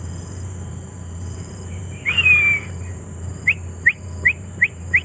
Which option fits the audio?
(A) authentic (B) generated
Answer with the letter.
B